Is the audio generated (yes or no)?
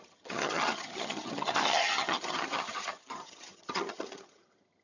yes